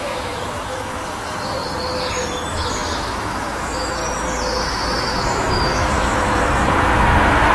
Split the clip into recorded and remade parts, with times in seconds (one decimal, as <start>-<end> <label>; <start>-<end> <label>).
0.0-1.6 remade; 1.6-2.5 recorded; 2.5-4.0 remade; 4.0-4.6 recorded; 4.6-7.5 remade